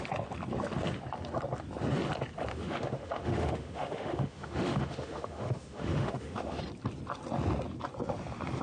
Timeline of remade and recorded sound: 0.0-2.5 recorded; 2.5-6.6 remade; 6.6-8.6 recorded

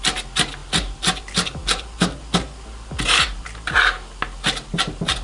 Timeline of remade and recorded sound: 0.0-5.2 recorded

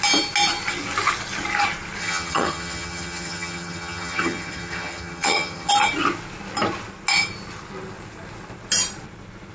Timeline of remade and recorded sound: 0.0-2.0 recorded; 2.0-5.7 remade; 5.7-9.5 recorded

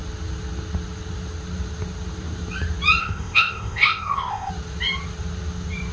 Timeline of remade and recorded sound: 0.0-3.0 recorded; 3.0-4.5 remade; 4.5-5.9 recorded